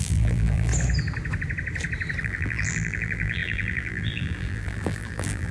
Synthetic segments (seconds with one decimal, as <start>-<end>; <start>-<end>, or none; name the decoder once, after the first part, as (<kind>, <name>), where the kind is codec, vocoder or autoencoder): 0.0-0.7 (vocoder, BigVGAN v2); 2.2-5.5